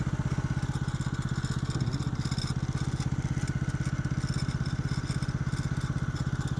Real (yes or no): yes